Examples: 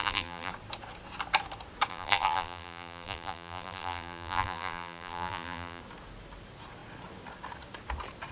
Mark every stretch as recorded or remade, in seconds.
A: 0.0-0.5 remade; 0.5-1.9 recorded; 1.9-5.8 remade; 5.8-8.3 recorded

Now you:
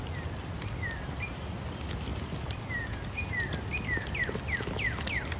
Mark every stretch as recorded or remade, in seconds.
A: 0.0-5.4 recorded

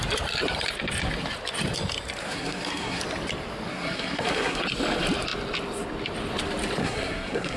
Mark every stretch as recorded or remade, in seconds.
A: 0.0-2.2 recorded; 2.2-3.0 remade; 3.0-3.7 recorded; 3.7-4.6 remade; 4.6-6.8 recorded; 6.8-7.6 remade

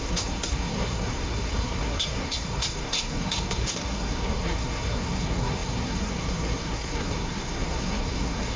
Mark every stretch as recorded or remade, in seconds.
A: 0.0-8.6 remade